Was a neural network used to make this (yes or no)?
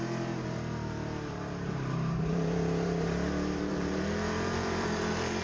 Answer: yes